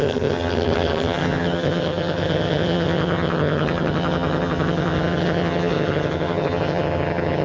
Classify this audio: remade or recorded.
remade